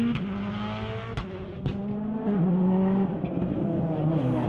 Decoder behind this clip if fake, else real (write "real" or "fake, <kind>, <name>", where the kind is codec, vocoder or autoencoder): real